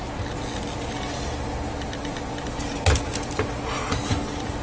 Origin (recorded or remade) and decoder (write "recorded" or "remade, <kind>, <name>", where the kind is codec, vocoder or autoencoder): recorded